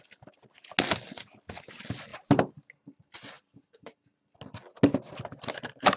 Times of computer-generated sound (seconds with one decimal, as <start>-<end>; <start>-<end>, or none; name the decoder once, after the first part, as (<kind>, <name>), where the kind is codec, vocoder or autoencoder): 2.1-4.2 (vocoder, BigVGAN v2)